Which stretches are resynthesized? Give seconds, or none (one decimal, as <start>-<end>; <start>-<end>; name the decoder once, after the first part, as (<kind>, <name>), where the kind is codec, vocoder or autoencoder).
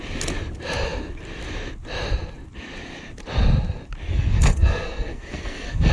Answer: 4.1-5.9 (codec, SNAC)